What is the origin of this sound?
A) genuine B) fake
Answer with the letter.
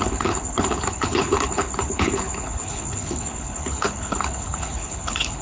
B